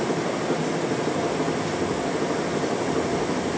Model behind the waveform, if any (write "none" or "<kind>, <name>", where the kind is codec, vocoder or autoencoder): none